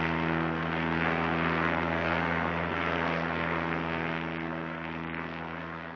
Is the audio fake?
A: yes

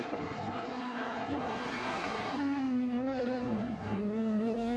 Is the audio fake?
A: yes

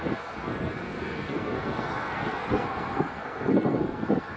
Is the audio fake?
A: yes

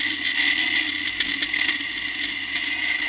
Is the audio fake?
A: no